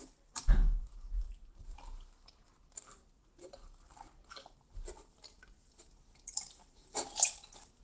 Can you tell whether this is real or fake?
real